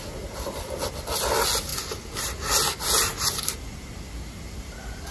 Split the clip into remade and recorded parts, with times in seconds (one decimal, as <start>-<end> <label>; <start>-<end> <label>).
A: 0.0-5.1 recorded